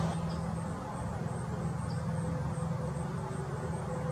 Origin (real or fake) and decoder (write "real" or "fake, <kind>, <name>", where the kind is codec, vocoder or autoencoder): real